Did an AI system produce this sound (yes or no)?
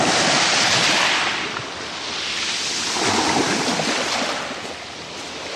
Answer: no